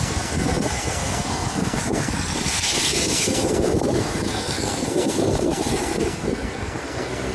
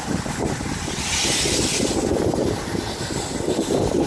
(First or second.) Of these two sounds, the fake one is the first